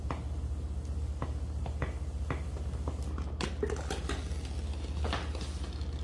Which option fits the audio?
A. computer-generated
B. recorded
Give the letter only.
B